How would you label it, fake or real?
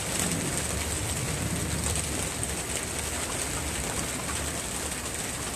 real